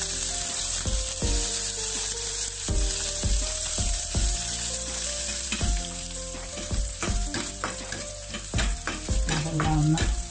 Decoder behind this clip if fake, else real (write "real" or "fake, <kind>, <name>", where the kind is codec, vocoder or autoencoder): fake, vocoder, BigVGAN v2